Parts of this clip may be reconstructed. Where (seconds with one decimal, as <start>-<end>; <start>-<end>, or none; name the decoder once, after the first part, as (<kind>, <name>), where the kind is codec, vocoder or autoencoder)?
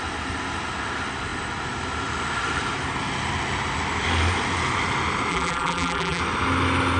5.3-6.2 (vocoder, BigVGAN v2)